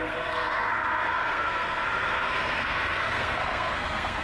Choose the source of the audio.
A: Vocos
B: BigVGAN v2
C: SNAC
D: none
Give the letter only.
C